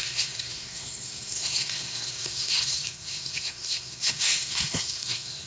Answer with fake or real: fake